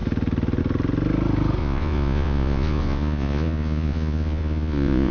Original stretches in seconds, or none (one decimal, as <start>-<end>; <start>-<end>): 0.0-1.6

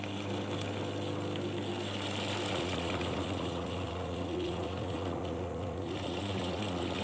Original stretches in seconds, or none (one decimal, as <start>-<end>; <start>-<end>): 0.0-2.5

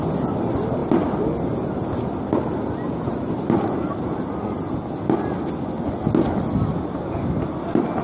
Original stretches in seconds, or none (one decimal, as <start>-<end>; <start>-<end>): 0.0-8.0

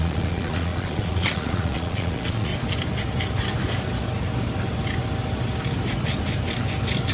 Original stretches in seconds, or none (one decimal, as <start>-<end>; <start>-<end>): 2.5-7.1

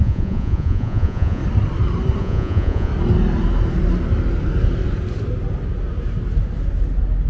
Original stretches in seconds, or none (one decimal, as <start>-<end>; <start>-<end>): 1.4-2.2; 2.9-7.3

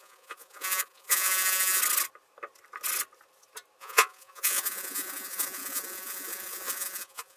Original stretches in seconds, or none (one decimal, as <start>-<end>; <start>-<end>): 1.8-3.8

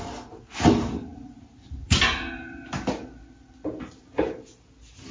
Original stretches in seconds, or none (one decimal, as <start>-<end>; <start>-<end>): 0.0-5.1

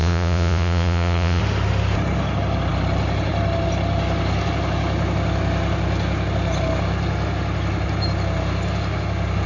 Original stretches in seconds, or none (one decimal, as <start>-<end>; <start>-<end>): 1.4-9.5